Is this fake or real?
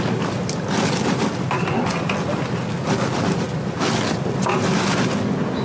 real